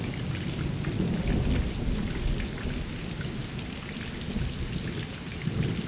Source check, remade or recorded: recorded